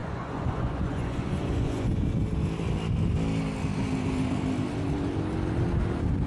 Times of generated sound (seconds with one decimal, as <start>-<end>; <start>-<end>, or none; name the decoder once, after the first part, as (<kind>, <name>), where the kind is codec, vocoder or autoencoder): 0.0-1.9 (vocoder, Vocos)